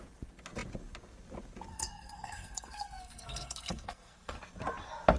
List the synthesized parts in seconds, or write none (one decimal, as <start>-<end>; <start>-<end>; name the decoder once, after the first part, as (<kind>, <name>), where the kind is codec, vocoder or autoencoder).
1.7-4.4 (codec, SNAC)